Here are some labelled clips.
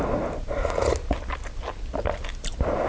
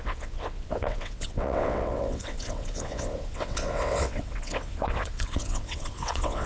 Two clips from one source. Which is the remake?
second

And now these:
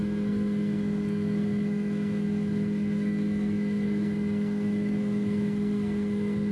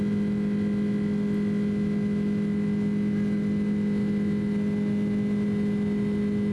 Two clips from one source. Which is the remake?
first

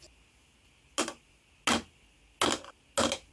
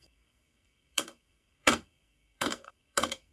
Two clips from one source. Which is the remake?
second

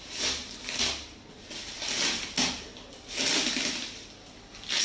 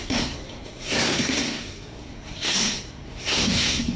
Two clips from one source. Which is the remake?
second